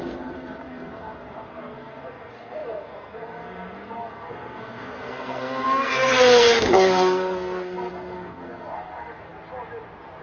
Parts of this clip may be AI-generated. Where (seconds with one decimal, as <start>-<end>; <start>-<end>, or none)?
0.0-9.3